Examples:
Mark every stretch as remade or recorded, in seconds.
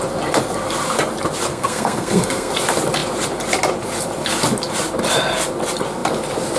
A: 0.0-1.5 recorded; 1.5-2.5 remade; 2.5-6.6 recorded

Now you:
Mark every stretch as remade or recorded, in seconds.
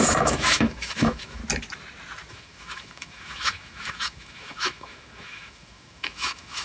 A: 0.0-1.4 remade; 1.4-2.3 recorded; 2.3-6.6 remade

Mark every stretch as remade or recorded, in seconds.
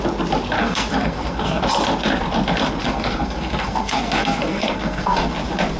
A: 0.0-0.6 recorded; 0.6-1.6 remade; 1.6-2.8 recorded; 2.8-5.3 remade; 5.3-5.8 recorded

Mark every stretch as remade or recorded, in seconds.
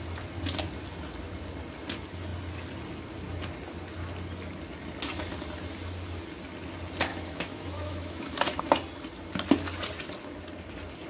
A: 0.0-7.1 recorded; 7.1-8.6 remade; 8.6-11.1 recorded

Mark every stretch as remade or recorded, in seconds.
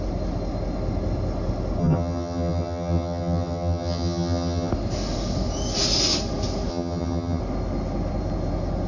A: 0.0-1.8 recorded; 1.8-4.7 remade; 4.7-6.7 recorded; 6.7-7.4 remade; 7.4-8.9 recorded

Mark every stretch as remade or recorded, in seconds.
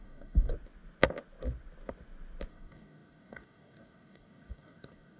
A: 0.0-0.5 remade; 0.5-2.5 recorded; 2.5-5.2 remade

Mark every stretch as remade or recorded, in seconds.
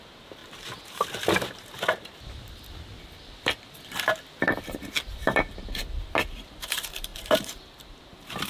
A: 0.0-0.4 remade; 0.4-4.4 recorded; 4.4-8.5 remade